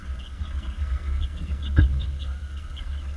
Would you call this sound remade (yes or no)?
yes